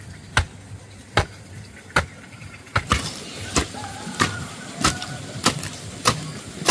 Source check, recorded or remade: recorded